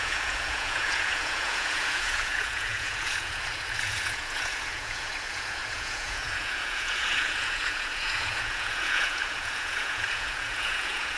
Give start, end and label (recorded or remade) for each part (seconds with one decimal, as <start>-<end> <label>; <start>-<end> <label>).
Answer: 0.0-11.2 remade